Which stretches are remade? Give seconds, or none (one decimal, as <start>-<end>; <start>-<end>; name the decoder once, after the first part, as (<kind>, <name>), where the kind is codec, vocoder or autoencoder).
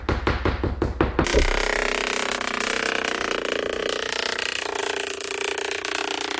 none